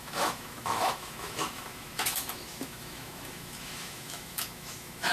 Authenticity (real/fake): fake